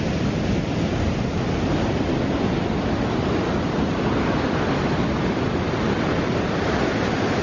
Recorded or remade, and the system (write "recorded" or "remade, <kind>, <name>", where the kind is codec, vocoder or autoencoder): recorded